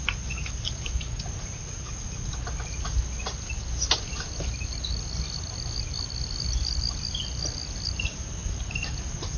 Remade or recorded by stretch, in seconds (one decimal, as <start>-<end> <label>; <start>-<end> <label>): 0.0-9.4 recorded